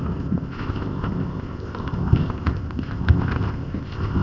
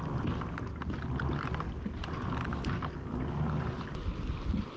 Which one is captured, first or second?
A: second